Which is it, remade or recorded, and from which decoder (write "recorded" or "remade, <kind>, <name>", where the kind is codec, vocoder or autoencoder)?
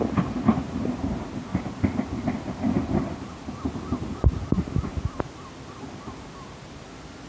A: recorded